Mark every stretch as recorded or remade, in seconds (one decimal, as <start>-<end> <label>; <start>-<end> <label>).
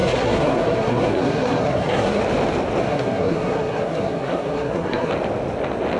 0.0-2.2 remade; 2.2-2.8 recorded; 2.8-5.1 remade; 5.1-6.0 recorded